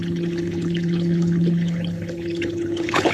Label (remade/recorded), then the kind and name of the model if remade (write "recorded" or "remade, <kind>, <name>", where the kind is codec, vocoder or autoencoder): remade, codec, HILCodec